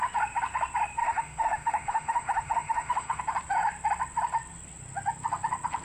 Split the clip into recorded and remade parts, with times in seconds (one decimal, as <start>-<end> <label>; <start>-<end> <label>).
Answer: 0.0-1.0 recorded; 1.0-3.2 remade; 3.2-5.8 recorded